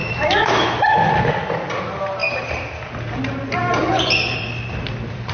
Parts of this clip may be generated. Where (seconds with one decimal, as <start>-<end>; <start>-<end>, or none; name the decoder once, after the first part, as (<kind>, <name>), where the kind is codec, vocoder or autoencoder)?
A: 0.0-1.1 (autoencoder, DAC-VAE)